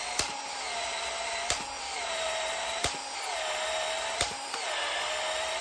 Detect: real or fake fake